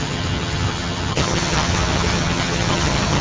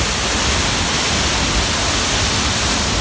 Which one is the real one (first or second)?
second